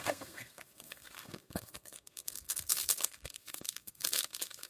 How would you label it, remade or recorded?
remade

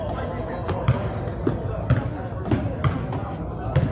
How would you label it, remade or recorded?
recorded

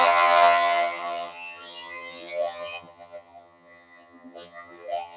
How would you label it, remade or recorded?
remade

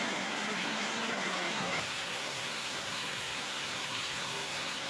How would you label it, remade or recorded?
remade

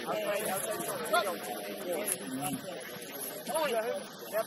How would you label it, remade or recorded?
recorded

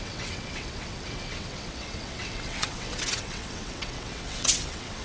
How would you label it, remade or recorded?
remade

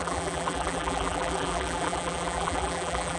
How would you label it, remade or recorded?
remade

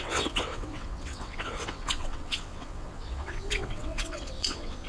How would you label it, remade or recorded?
remade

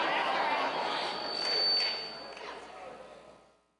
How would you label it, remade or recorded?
recorded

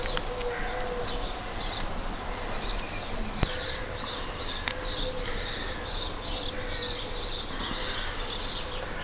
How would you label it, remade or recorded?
recorded